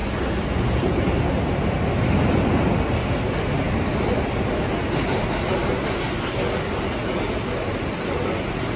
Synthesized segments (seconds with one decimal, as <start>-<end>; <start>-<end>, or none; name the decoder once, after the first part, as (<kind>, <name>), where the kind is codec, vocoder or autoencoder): none